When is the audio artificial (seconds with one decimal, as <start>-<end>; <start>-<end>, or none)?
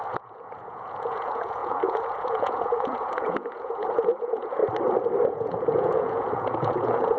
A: 0.0-4.6; 5.3-7.2